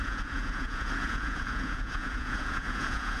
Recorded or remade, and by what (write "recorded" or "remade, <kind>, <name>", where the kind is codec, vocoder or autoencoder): remade, vocoder, Vocos